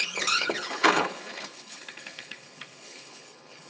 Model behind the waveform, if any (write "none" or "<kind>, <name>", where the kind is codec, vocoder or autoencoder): codec, HILCodec